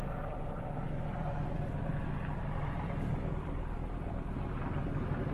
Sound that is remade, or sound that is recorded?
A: remade